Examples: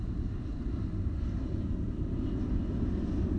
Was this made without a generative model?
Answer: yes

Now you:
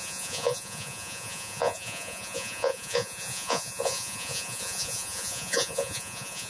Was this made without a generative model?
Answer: no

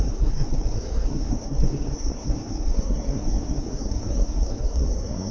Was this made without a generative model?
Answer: no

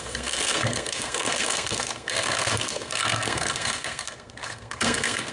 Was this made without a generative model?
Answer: no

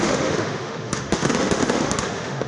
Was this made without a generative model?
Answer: no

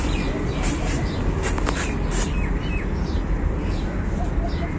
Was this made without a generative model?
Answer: yes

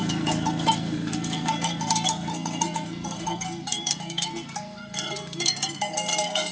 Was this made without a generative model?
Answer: no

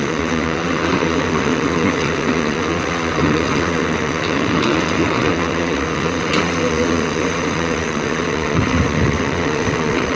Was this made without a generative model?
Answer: no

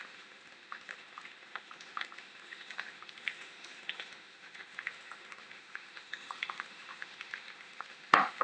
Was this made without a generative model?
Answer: no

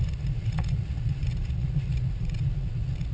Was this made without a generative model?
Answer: no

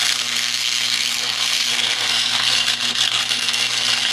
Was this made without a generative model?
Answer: no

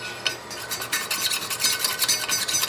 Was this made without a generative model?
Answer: yes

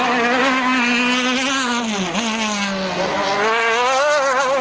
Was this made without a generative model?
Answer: yes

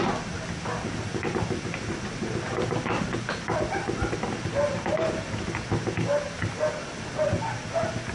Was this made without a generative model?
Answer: yes